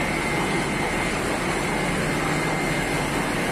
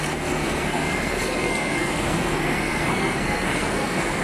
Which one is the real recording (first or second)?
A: first